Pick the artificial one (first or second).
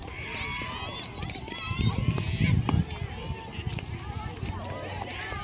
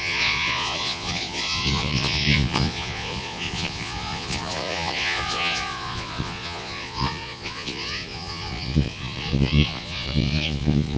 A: second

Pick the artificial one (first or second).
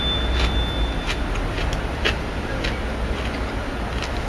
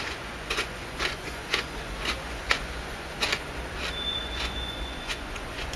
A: second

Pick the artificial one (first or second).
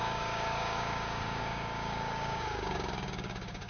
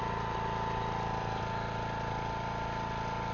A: first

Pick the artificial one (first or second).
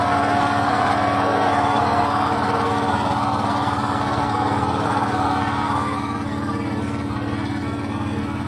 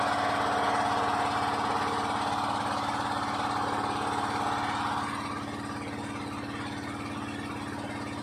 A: first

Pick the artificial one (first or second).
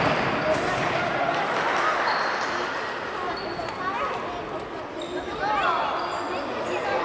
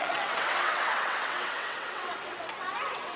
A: second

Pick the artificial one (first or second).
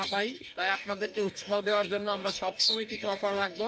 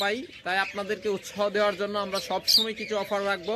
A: first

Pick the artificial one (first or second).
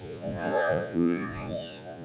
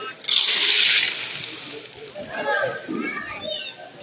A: first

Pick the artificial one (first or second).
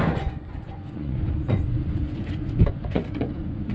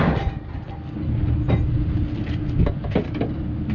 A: first